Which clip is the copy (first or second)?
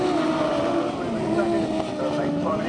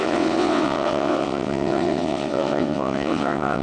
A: second